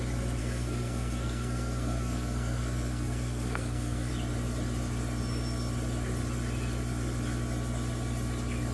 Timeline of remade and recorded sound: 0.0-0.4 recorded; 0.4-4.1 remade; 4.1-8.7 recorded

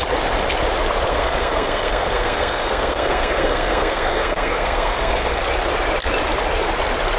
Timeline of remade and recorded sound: 0.0-1.1 recorded; 1.1-5.4 remade; 5.4-7.2 recorded

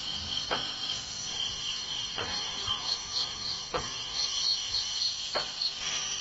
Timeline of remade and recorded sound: 0.0-1.3 recorded; 1.3-5.0 remade; 5.0-6.2 recorded

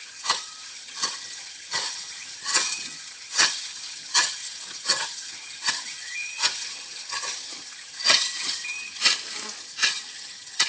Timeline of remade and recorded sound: 0.0-9.0 remade; 9.0-9.6 recorded; 9.6-10.7 remade

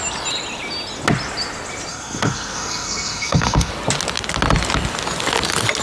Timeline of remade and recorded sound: 0.0-1.9 recorded; 1.9-3.7 remade; 3.7-5.8 recorded

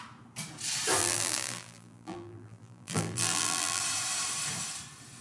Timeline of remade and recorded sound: 0.0-1.0 recorded; 1.0-3.8 remade; 3.8-5.2 recorded

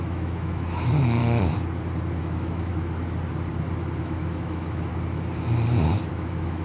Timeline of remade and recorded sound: 0.0-1.2 remade; 1.2-2.2 recorded; 2.2-2.7 remade; 2.7-4.0 recorded; 4.0-4.9 remade; 4.9-6.1 recorded; 6.1-6.6 remade

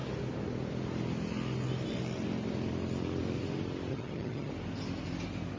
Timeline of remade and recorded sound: 0.0-3.9 recorded; 3.9-4.5 remade; 4.5-5.6 recorded